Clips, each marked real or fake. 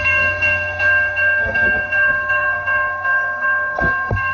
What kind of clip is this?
fake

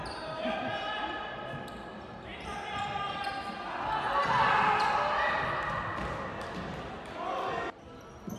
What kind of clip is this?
real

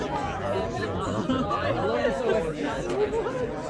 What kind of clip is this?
real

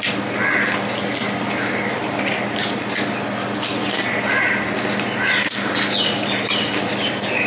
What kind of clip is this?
real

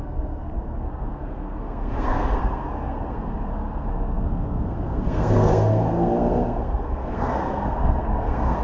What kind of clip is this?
fake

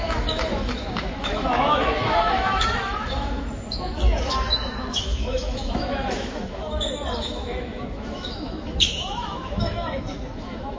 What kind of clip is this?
fake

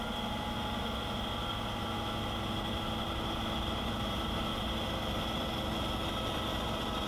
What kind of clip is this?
real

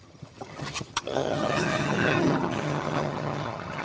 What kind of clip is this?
fake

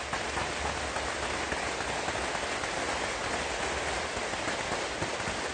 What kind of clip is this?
real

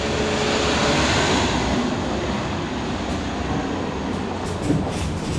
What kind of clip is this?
real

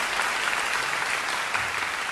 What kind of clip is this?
real